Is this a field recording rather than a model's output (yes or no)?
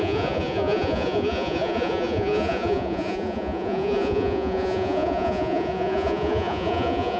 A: no